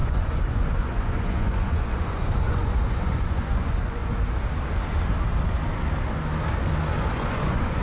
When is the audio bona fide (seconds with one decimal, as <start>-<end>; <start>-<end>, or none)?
4.0-7.1